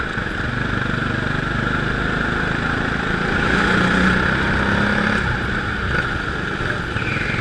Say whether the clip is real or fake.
real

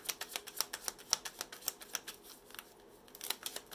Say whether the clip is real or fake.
real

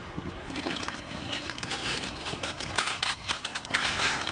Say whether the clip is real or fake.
fake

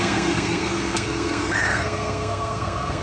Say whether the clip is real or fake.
fake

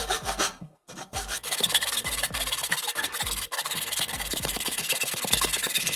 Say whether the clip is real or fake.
fake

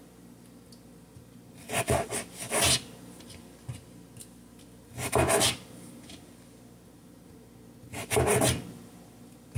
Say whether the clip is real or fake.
real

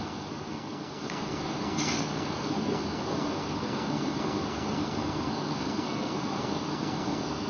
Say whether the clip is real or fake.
fake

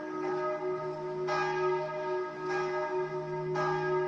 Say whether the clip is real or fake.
real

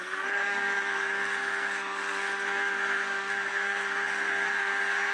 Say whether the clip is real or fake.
fake